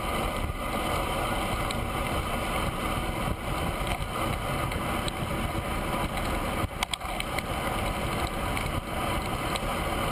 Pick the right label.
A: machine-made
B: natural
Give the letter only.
B